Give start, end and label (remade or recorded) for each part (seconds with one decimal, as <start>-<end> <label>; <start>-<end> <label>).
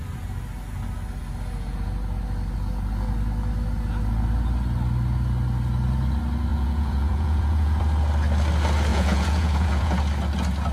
0.0-6.5 recorded; 6.5-7.8 remade; 7.8-8.9 recorded; 8.9-10.0 remade; 10.0-10.7 recorded